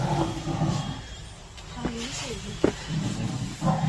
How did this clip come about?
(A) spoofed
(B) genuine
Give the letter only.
B